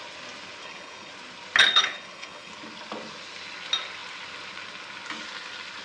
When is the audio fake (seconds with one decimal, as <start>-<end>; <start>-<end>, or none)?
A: 0.6-1.1; 1.6-2.5